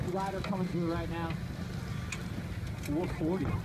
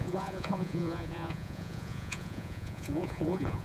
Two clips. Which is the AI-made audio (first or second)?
second